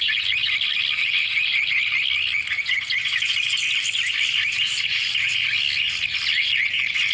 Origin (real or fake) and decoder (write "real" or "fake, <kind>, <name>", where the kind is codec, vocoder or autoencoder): real